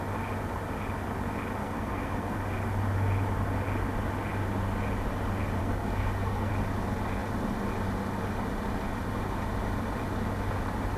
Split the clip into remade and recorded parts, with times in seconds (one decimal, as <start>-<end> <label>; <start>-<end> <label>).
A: 0.0-1.6 recorded; 1.6-2.4 remade; 2.4-5.6 recorded; 5.6-6.5 remade; 6.5-11.0 recorded